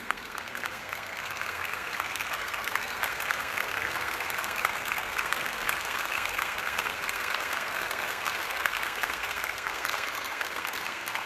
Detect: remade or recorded remade